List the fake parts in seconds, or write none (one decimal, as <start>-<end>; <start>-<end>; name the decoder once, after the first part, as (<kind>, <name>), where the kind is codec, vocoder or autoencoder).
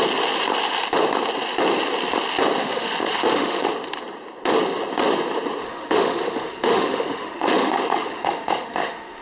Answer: 2.6-3.7 (autoencoder, DAC-VAE); 5.6-9.2